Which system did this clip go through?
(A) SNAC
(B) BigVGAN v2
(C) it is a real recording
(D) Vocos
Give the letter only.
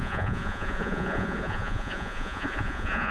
D